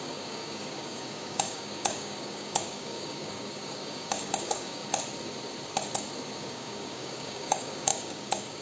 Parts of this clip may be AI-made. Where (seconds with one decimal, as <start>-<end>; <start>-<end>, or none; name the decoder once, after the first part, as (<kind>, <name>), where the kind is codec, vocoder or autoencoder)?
0.0-4.8 (codec, DAC); 6.4-8.6